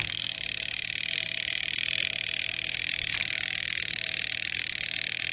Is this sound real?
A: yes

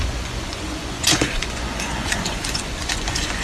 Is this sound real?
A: no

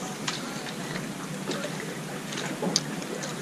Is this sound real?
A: yes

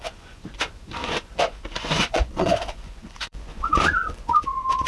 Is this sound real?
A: no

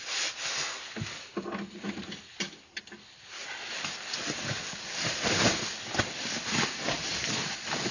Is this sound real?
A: yes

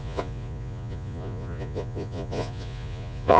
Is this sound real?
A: no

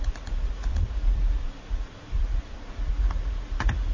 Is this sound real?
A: no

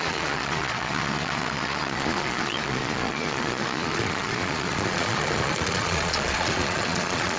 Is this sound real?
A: no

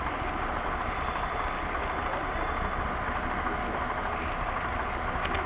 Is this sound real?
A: yes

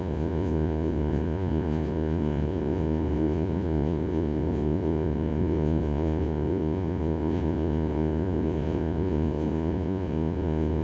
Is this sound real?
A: no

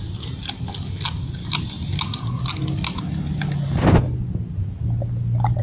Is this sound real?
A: yes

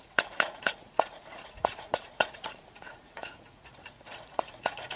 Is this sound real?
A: no